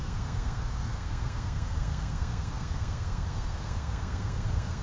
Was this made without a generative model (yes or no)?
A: no